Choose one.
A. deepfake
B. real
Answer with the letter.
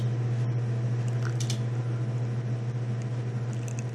B